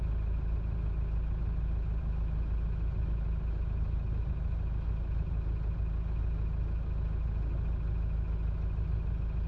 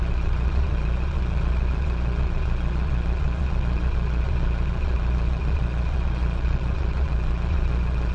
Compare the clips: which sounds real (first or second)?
first